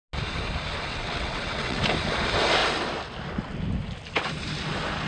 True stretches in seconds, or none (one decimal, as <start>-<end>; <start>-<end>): 0.0-0.9; 1.8-5.1